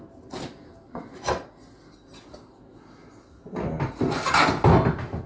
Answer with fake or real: real